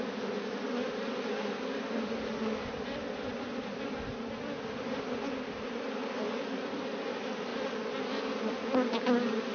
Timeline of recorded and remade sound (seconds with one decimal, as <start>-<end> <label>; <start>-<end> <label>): 0.0-9.5 recorded